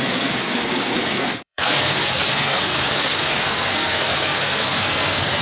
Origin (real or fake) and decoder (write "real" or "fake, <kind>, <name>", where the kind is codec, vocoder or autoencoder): fake, codec, SNAC